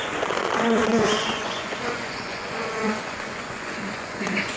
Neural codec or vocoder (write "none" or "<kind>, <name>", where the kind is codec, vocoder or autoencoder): vocoder, Vocos